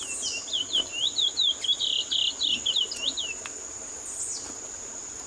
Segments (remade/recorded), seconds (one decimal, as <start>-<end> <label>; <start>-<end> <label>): 0.0-5.3 recorded